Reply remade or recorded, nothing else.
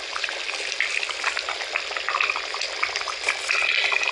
recorded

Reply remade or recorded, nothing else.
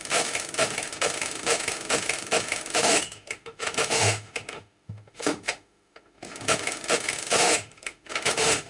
remade